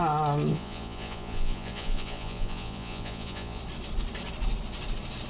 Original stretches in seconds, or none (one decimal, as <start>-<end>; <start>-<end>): 0.0-0.5; 3.6-5.3